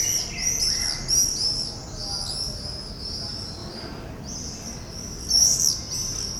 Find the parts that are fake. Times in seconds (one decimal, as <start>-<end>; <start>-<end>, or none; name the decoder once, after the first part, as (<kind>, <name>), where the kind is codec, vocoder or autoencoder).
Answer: 0.4-1.4 (vocoder, BigVGAN v2); 1.8-2.3; 3.6-5.3